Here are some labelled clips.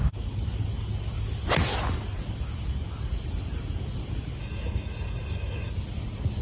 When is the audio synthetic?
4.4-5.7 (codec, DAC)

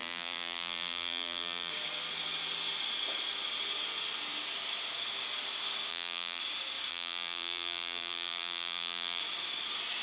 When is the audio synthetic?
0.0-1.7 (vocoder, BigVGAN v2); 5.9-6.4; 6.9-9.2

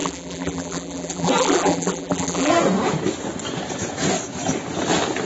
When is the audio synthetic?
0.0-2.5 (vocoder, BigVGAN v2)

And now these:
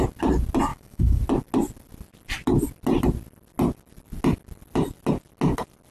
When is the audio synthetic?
0.7-1.2 (autoencoder, DAC-VAE)

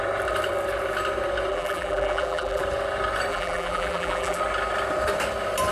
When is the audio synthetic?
1.5-2.6 (vocoder, BigVGAN v2); 3.3-4.4

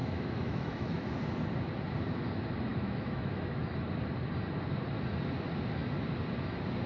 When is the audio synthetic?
0.0-1.1 (autoencoder, DAC-VAE); 2.7-3.7